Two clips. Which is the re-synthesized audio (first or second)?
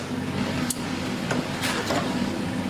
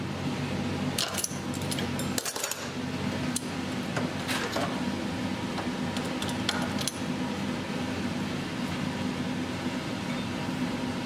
first